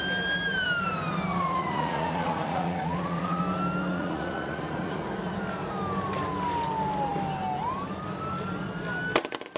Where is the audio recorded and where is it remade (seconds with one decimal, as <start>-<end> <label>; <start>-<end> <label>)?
0.0-1.3 recorded; 1.3-3.4 remade; 3.4-3.9 recorded; 3.9-5.0 remade; 5.0-9.6 recorded